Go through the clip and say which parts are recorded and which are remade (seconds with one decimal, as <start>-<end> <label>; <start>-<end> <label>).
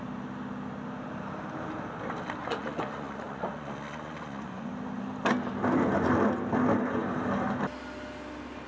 0.0-2.4 recorded; 2.4-4.7 remade; 4.7-8.7 recorded